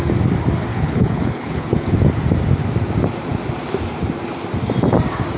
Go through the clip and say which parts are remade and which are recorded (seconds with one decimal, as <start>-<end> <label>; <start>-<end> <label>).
0.0-0.7 recorded; 0.7-1.9 remade; 1.9-5.4 recorded